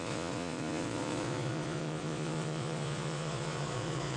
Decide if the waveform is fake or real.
fake